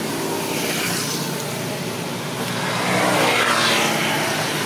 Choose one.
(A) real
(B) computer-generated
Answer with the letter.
A